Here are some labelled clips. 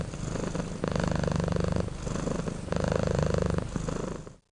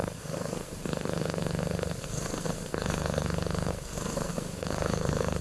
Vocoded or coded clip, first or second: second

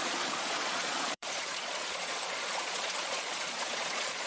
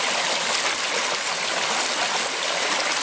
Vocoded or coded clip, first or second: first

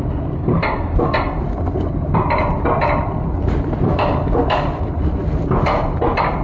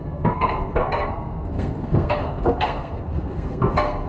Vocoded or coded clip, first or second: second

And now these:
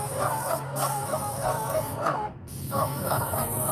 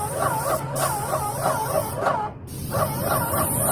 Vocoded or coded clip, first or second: first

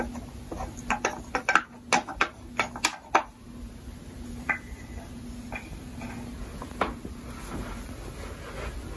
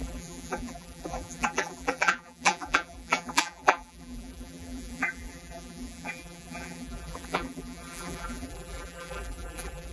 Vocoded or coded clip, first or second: second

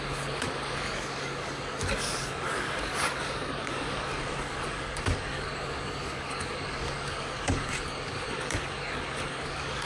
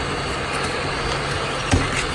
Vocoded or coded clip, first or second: first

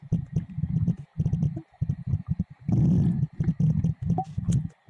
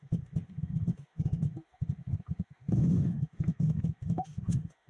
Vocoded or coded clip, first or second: second